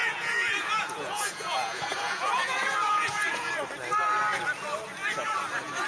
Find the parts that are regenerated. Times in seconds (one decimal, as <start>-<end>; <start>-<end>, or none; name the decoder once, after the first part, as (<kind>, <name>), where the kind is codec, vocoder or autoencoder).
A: 0.0-3.5 (vocoder, Vocos)